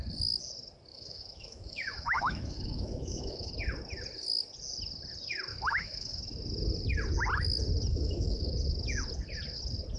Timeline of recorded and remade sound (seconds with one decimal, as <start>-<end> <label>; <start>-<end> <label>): 0.0-0.9 recorded; 0.9-3.5 remade; 3.5-5.5 recorded; 5.5-6.2 remade; 6.2-7.9 recorded; 7.9-8.5 remade; 8.5-10.0 recorded